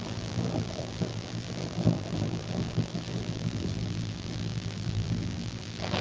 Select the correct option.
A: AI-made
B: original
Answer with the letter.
A